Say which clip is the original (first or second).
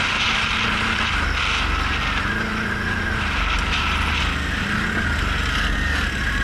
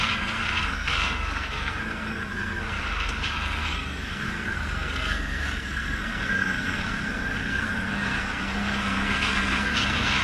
first